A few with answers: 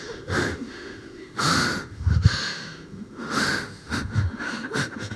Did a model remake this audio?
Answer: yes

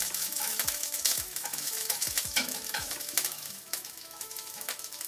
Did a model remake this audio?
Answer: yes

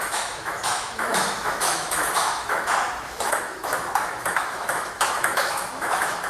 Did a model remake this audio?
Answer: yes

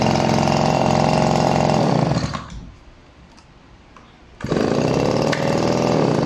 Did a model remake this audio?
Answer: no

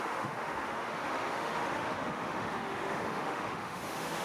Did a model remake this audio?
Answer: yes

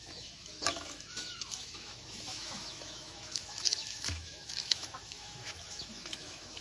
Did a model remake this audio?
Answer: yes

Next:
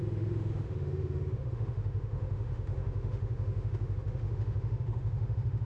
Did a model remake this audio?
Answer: yes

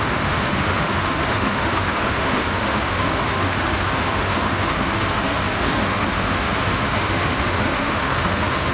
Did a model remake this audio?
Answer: yes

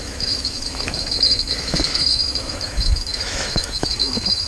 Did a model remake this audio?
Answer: yes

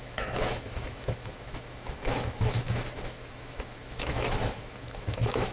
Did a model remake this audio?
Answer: yes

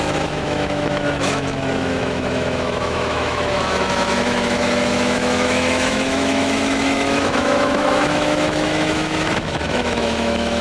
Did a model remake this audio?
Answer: yes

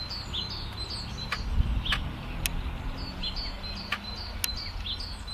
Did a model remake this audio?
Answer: no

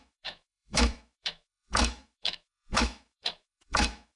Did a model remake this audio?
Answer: yes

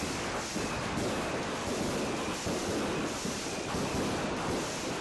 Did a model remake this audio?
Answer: no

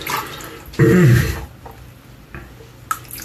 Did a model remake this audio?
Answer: no